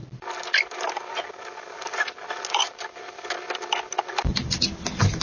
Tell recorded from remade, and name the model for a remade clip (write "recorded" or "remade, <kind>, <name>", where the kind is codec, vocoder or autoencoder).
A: recorded